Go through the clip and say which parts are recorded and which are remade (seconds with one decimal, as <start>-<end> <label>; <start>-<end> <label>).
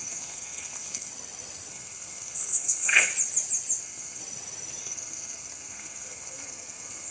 0.0-1.1 remade; 1.1-1.7 recorded; 1.7-3.1 remade; 3.1-3.8 recorded; 3.8-4.2 remade; 4.2-4.8 recorded; 4.8-7.1 remade